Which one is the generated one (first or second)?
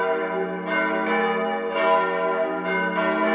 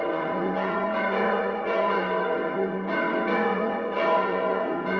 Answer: second